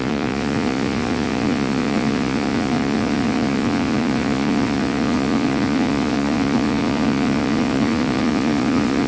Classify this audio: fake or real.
fake